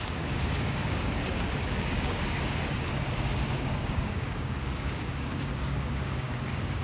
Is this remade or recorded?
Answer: remade